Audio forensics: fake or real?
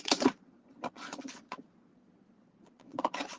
fake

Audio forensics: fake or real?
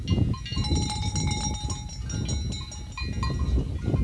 real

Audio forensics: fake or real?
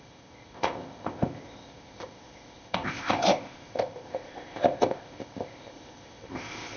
fake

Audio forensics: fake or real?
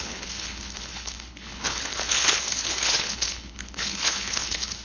fake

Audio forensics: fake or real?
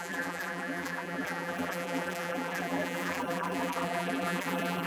fake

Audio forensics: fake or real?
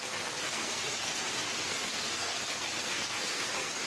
fake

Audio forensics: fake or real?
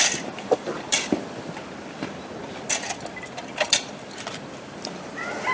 fake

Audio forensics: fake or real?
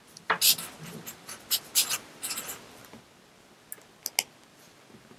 real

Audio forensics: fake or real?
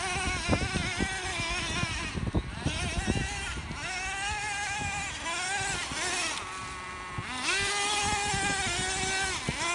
real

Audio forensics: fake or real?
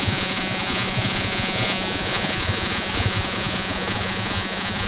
fake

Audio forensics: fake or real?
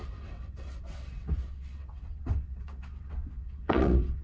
fake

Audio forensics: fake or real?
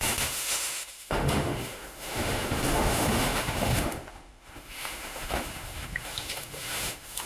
fake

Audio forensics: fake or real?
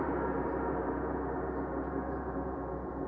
fake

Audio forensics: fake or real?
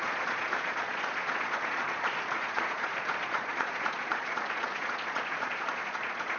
fake